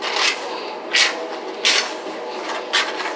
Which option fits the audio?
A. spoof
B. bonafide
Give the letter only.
B